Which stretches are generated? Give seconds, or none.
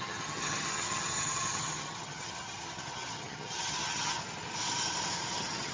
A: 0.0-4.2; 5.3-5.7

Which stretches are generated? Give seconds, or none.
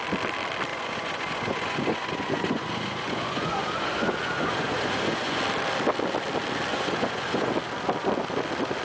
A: 0.7-5.4; 6.7-7.5